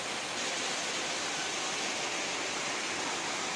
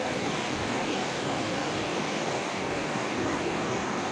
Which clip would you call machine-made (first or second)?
second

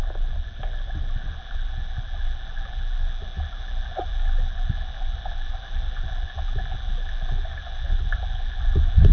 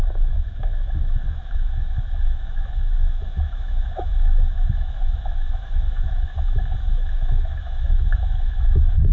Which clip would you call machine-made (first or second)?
second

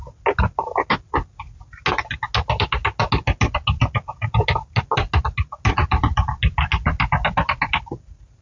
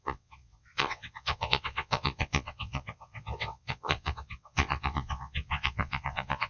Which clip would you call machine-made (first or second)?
second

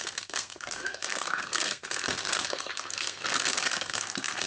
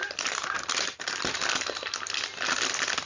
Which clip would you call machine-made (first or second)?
first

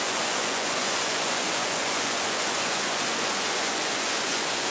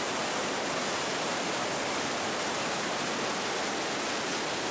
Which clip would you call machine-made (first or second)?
first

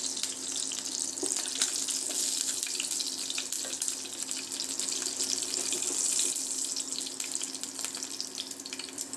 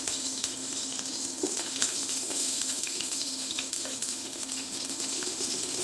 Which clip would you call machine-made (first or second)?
second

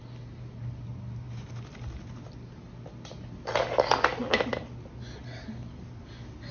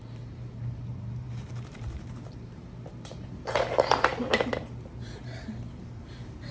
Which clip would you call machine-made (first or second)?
second